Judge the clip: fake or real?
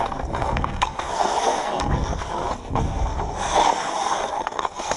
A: fake